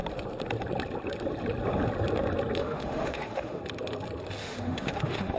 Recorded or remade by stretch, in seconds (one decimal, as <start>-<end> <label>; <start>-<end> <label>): 0.0-2.6 recorded; 2.6-3.6 remade; 3.6-4.4 recorded; 4.4-5.4 remade